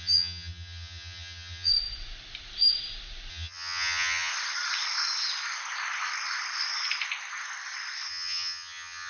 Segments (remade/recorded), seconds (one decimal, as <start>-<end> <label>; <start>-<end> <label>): 0.0-1.7 remade; 1.7-3.3 recorded; 3.3-4.3 remade; 4.3-8.1 recorded; 8.1-9.1 remade